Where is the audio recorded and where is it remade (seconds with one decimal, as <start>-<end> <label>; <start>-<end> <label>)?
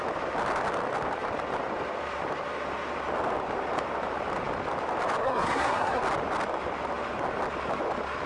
0.0-5.2 recorded; 5.2-6.0 remade; 6.0-8.3 recorded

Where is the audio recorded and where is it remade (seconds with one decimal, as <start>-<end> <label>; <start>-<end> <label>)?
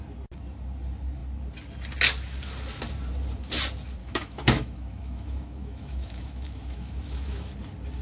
0.0-4.0 recorded; 4.0-7.5 remade; 7.5-8.0 recorded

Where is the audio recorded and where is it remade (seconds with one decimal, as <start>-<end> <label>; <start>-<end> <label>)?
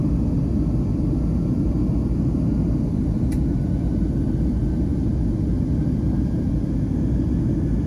0.0-7.9 recorded